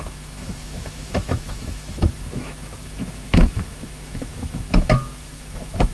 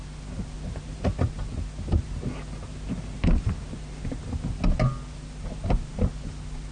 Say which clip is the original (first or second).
second